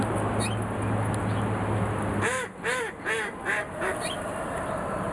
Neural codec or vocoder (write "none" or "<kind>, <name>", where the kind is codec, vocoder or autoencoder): none